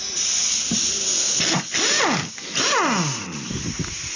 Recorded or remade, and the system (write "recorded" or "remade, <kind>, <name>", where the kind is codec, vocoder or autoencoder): recorded